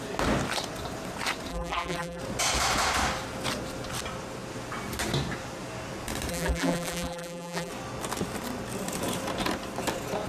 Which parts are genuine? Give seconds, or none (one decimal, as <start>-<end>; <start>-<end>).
0.0-1.5; 2.2-6.3; 7.7-10.3